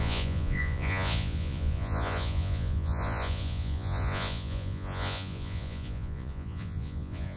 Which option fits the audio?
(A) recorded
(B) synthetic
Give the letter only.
B